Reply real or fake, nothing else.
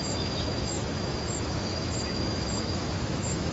fake